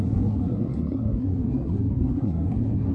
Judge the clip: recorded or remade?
remade